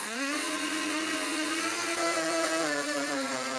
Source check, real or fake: fake